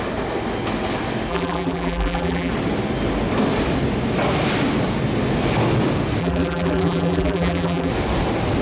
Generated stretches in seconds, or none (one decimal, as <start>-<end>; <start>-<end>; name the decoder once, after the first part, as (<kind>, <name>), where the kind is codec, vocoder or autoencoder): 1.3-2.5 (vocoder, BigVGAN v2); 6.2-7.9